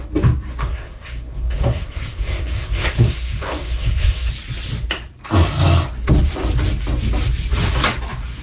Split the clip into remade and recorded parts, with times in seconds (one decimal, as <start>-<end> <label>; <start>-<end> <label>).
0.0-0.6 recorded; 0.6-4.3 remade; 4.3-8.4 recorded